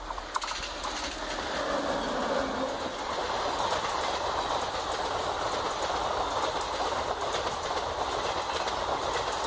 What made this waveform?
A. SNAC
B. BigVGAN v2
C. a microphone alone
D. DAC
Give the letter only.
C